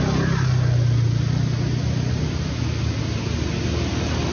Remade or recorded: recorded